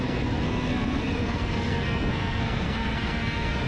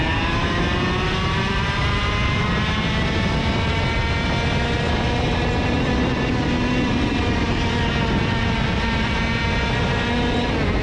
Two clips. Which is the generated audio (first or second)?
first